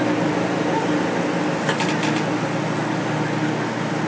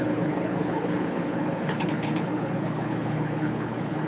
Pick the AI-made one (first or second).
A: second